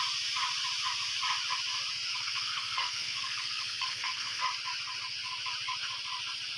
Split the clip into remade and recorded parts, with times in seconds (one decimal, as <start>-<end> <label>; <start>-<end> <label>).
0.0-2.1 recorded; 2.1-4.4 remade; 4.4-6.6 recorded